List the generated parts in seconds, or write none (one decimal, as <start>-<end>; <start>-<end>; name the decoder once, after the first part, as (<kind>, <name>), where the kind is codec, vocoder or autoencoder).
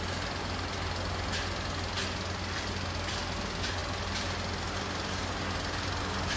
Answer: none